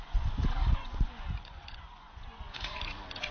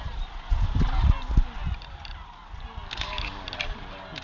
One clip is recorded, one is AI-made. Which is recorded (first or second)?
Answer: second